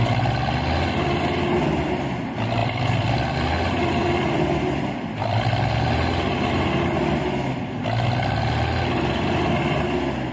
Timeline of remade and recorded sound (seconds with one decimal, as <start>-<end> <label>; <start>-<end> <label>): 0.0-2.6 recorded; 2.6-5.9 remade; 5.9-10.3 recorded